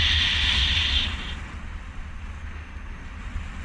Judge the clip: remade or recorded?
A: recorded